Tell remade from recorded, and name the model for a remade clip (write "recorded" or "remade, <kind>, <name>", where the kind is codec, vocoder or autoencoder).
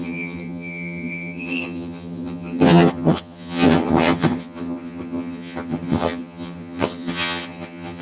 remade, vocoder, HiFi-GAN